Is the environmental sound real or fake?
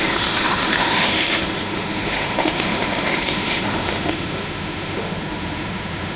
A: fake